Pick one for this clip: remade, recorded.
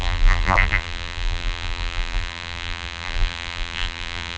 remade